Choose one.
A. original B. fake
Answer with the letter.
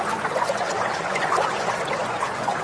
B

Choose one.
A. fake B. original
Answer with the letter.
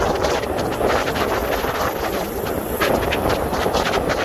B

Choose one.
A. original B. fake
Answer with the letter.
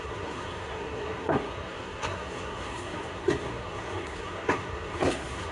B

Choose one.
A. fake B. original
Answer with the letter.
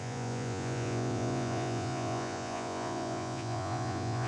A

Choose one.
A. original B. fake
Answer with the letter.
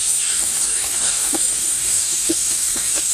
B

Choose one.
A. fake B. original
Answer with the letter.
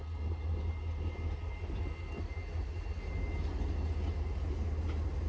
B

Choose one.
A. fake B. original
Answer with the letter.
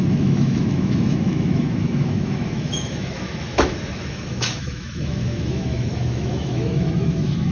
A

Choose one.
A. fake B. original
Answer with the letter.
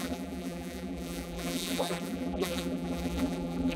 A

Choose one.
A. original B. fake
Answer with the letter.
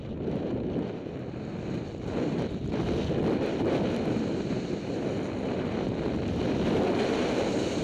A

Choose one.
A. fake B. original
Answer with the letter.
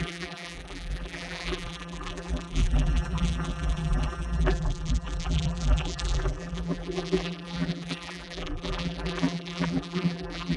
A